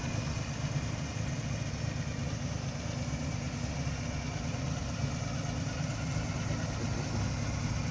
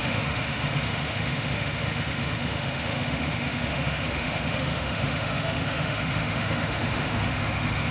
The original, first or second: first